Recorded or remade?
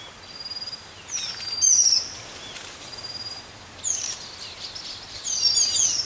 recorded